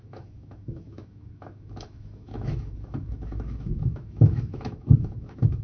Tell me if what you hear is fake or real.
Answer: fake